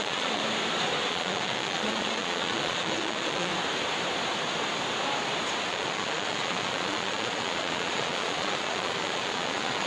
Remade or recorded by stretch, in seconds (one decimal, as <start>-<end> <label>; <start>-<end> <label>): 0.0-0.4 remade; 0.4-1.1 recorded; 1.1-3.5 remade; 3.5-5.7 recorded; 5.7-9.9 remade